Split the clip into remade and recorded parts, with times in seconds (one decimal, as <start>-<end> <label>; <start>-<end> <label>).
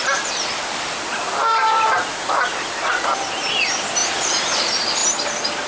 0.0-1.5 recorded; 1.5-3.3 remade; 3.3-4.0 recorded; 4.0-4.6 remade; 4.6-5.7 recorded